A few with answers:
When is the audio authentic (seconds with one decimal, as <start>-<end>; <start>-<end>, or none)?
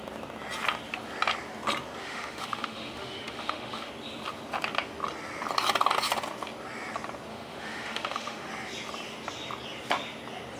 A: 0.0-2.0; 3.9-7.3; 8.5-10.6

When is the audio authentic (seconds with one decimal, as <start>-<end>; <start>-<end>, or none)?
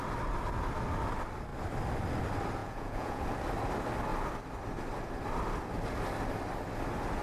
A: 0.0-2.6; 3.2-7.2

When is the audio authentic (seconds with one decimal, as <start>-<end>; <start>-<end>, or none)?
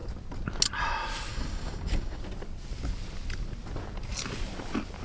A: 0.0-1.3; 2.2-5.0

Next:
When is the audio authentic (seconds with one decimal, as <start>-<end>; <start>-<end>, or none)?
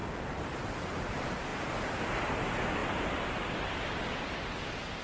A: 0.0-5.0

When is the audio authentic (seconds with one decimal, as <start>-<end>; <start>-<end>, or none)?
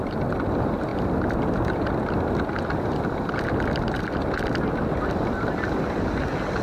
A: 0.0-6.6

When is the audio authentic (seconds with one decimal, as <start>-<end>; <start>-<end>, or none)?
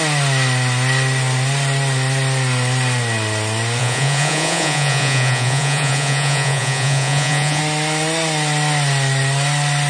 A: 0.0-3.8; 7.6-9.9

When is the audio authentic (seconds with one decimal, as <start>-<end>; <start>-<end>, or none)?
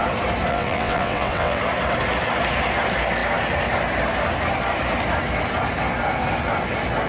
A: 0.0-0.5; 1.6-7.1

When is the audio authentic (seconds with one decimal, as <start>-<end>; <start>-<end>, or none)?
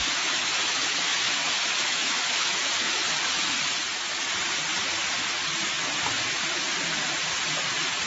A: 3.0-8.1